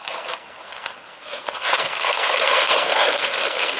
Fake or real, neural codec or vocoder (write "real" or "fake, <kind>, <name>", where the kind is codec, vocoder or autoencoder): fake, codec, SNAC